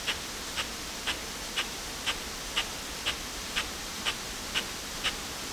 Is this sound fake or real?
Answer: real